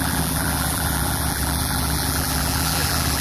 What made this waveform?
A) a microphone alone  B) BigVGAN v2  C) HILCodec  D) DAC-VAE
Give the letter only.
B